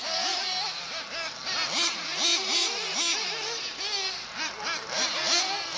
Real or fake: real